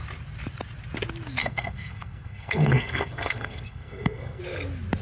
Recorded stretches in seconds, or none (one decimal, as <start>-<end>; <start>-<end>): 0.0-1.4; 4.4-5.0